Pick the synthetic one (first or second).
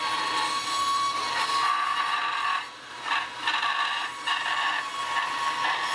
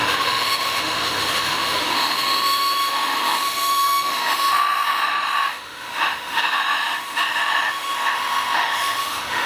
second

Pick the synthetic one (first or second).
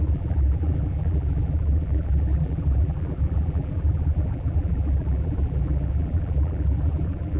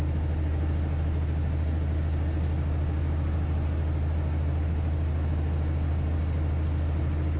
first